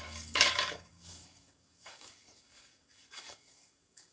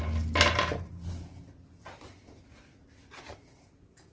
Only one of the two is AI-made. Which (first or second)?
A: first